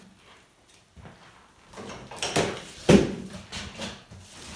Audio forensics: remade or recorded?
recorded